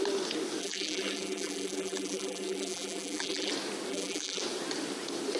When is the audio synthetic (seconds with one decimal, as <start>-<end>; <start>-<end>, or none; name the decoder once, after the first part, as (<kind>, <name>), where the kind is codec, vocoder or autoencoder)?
0.6-3.5 (vocoder, BigVGAN v2); 3.9-4.4